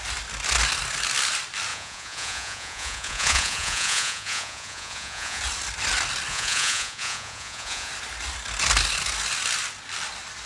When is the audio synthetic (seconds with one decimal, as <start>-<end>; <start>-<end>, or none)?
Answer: 1.7-5.4; 6.3-7.9